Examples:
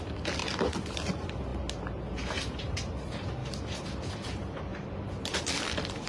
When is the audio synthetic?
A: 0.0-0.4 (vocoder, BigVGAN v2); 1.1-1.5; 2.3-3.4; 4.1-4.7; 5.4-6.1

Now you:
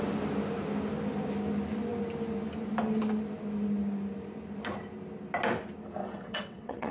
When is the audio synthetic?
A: 6.0-6.9 (vocoder, WaveNeXt)